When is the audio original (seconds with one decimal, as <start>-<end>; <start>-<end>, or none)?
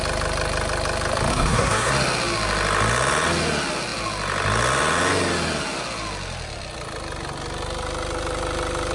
0.0-1.3; 1.9-8.9